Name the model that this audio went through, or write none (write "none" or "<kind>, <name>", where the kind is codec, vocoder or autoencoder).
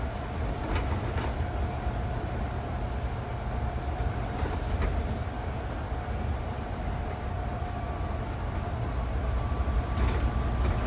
none